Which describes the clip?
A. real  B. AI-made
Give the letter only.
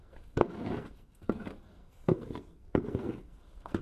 B